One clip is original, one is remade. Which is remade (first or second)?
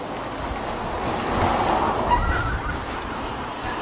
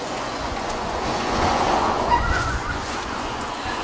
second